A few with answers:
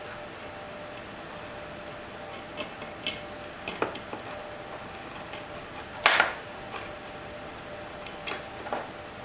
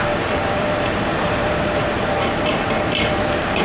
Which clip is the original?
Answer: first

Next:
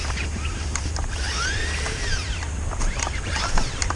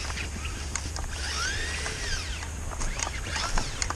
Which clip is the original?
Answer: second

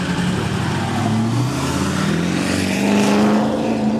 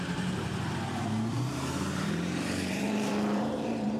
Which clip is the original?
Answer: first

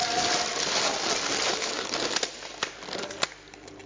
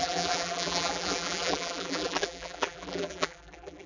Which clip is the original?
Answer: first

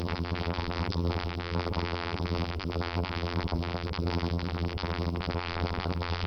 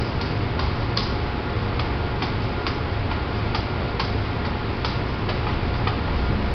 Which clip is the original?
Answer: second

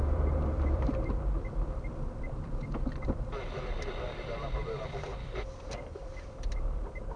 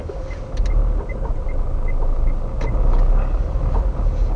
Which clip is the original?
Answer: second